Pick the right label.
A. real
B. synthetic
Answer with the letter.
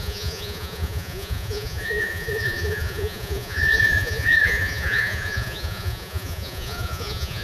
B